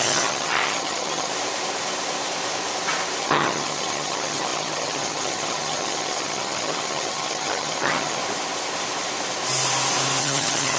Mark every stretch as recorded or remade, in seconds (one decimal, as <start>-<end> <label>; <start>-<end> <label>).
0.0-1.3 remade; 1.3-3.2 recorded; 3.2-8.2 remade; 8.2-10.2 recorded; 10.2-10.8 remade